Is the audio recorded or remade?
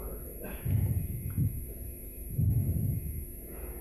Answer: recorded